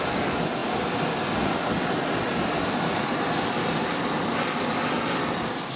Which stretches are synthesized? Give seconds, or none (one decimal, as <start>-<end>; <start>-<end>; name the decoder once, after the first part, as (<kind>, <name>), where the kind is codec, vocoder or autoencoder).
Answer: none